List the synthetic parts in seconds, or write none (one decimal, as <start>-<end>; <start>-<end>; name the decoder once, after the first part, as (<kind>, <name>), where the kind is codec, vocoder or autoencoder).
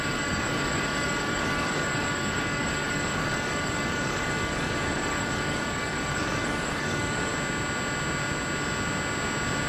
0.0-7.3 (codec, DAC)